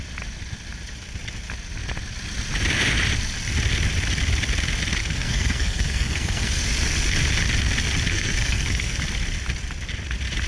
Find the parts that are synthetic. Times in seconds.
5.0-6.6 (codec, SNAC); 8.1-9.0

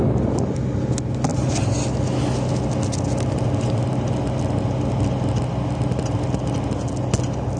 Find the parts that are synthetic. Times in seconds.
none